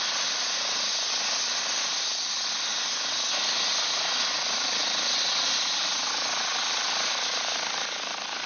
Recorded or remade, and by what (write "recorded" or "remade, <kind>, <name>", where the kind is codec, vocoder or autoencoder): recorded